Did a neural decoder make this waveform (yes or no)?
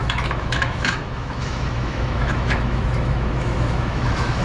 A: yes